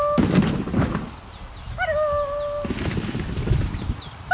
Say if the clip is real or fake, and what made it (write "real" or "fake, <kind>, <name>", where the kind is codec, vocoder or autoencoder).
real